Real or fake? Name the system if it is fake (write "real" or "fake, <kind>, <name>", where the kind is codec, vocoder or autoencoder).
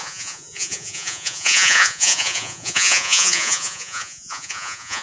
fake, vocoder, Vocos